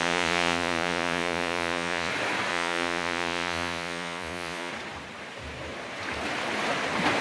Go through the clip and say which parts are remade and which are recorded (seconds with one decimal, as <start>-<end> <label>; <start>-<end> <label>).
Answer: 0.0-2.1 remade; 2.1-2.5 recorded; 2.5-4.7 remade; 4.7-7.2 recorded